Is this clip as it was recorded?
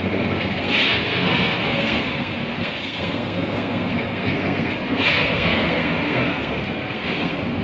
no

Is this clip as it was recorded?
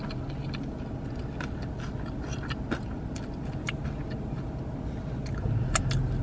yes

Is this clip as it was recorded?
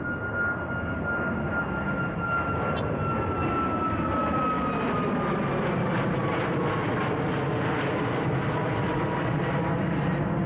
yes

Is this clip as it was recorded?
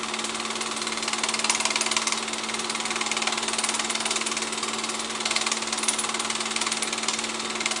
yes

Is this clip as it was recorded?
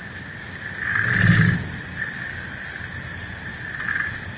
yes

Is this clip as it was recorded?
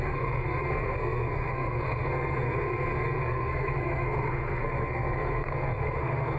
no